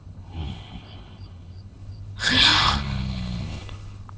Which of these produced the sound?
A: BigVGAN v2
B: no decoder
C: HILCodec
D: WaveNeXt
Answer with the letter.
C